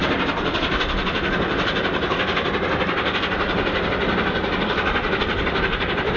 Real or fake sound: real